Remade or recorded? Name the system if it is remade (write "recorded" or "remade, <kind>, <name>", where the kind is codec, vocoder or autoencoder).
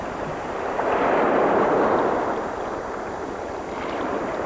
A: recorded